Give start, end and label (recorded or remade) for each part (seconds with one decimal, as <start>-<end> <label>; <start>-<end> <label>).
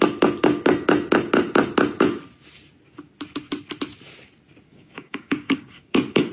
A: 0.0-4.7 recorded; 4.7-6.3 remade